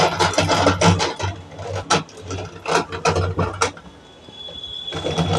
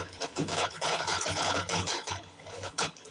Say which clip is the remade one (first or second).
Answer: second